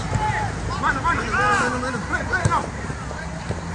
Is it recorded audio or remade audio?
recorded